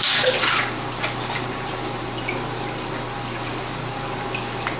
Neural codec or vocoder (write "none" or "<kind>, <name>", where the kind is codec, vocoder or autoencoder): none